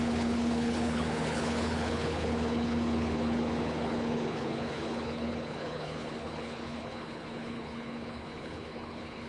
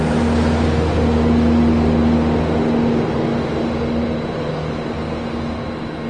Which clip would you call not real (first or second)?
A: first